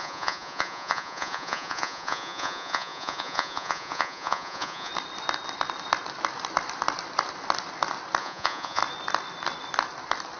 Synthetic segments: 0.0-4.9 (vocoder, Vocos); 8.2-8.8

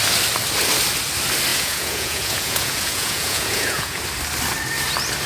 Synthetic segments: 1.5-4.0 (vocoder, Vocos)

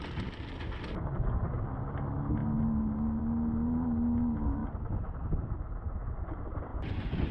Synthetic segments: 6.7-7.3 (vocoder, Vocos)

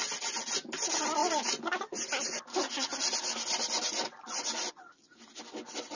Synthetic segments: none

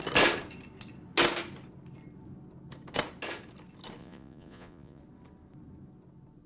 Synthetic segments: 4.0-5.0 (vocoder, Vocos)

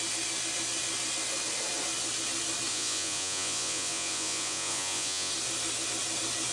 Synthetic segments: 2.7-5.3 (vocoder, Vocos)